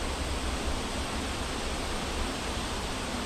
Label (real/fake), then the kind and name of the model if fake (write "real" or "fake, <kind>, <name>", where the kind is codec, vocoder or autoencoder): real